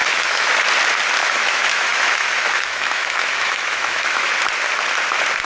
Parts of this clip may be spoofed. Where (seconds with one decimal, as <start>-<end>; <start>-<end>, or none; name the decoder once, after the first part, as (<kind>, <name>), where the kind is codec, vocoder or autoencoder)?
0.0-0.5 (autoencoder, DAC-VAE); 1.2-4.3